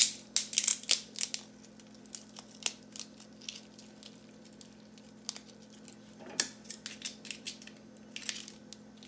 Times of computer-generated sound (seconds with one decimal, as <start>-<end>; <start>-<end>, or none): none